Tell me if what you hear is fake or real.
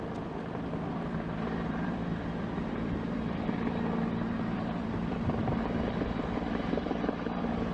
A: fake